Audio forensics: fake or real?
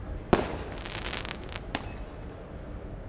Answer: real